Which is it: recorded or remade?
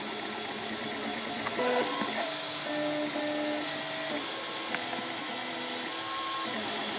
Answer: recorded